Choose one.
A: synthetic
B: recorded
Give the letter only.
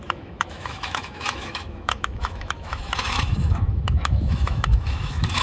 A